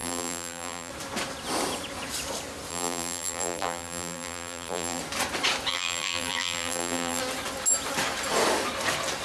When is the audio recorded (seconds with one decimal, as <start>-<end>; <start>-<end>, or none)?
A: 0.9-2.7; 5.0-5.7; 7.2-9.2